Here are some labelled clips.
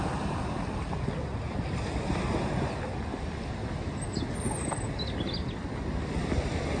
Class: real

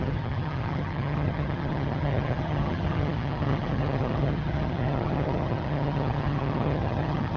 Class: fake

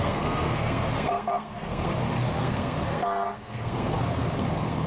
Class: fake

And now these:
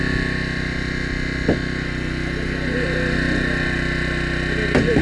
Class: real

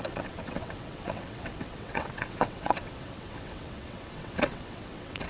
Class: fake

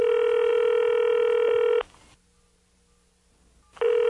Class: real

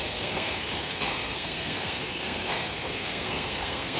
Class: fake